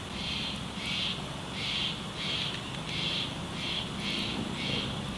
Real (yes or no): yes